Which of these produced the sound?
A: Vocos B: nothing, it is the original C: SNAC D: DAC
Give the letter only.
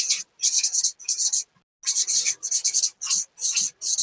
B